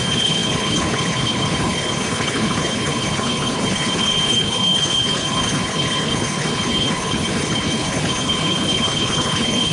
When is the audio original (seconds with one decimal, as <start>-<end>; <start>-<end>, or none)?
none